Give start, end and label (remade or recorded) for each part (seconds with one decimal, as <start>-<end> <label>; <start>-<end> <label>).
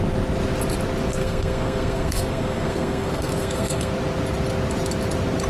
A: 0.0-1.1 recorded; 1.1-3.9 remade; 3.9-5.5 recorded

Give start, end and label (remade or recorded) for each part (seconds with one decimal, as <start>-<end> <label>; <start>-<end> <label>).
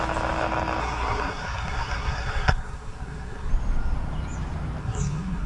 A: 0.0-0.8 recorded; 0.8-3.5 remade; 3.5-4.8 recorded; 4.8-5.5 remade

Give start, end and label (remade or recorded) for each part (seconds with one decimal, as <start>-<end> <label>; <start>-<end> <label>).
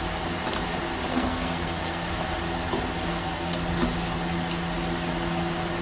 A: 0.0-1.1 recorded; 1.1-2.1 remade; 2.1-3.0 recorded; 3.0-3.6 remade; 3.6-5.8 recorded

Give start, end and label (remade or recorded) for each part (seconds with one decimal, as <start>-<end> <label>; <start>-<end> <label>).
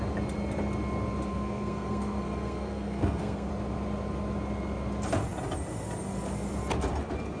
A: 0.0-1.3 recorded; 1.3-3.5 remade; 3.5-7.4 recorded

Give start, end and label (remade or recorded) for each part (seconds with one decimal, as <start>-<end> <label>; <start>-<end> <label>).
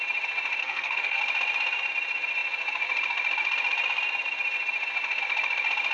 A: 0.0-0.6 recorded; 0.6-1.2 remade; 1.2-5.9 recorded